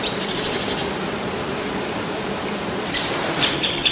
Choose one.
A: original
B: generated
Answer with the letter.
B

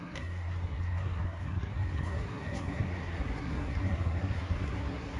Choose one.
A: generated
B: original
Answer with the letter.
A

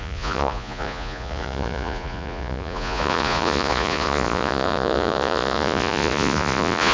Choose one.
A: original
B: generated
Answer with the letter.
B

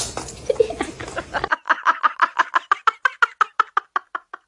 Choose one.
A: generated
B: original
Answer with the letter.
B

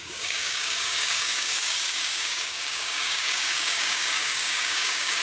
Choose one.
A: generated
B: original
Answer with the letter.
A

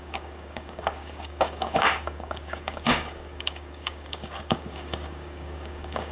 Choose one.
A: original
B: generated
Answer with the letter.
B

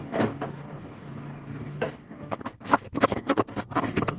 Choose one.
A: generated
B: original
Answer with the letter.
A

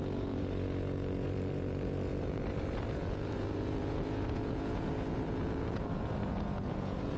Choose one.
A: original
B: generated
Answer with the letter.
B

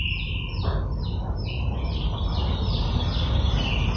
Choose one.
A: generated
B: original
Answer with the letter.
B